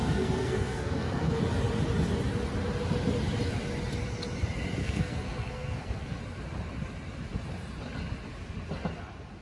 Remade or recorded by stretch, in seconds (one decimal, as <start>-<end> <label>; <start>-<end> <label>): 0.0-1.4 remade; 1.4-4.8 recorded; 4.8-6.2 remade; 6.2-9.4 recorded